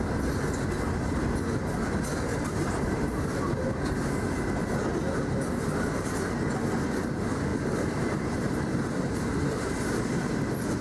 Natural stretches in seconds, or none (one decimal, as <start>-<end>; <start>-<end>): 0.0-2.3; 3.7-7.5; 10.3-10.8